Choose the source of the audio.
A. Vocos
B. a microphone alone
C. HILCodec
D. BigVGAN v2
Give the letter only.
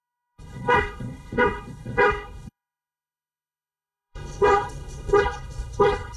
C